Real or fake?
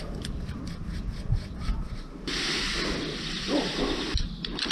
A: real